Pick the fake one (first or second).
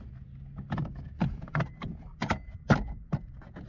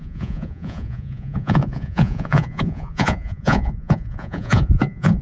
second